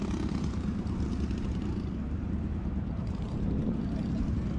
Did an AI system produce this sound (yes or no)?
yes